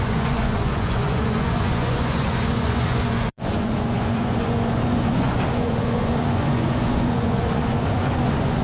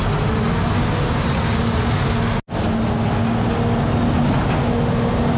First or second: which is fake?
first